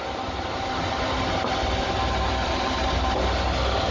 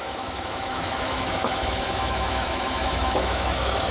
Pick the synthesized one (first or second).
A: second